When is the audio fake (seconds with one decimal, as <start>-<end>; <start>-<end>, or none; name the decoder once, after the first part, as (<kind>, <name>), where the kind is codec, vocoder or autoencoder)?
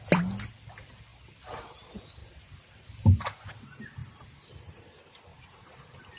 2.2-3.5 (vocoder, BigVGAN v2); 5.3-5.8